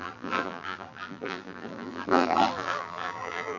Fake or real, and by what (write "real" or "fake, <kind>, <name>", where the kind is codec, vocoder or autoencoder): fake, vocoder, BigVGAN v2